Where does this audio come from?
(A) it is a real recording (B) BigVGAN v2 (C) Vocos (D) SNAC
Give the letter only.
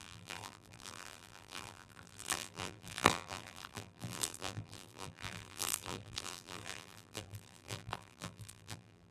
B